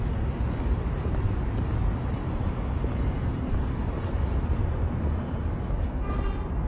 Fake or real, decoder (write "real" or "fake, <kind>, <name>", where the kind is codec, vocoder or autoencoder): real